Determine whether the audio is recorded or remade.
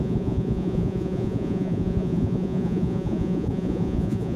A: remade